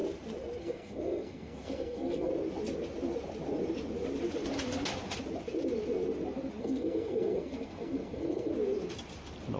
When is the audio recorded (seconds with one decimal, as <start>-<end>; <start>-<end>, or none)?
0.0-0.6; 2.3-6.6; 8.5-9.6